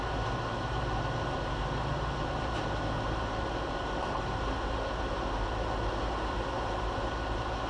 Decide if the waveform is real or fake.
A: fake